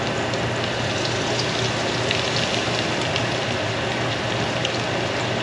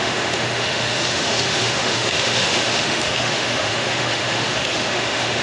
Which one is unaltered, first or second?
first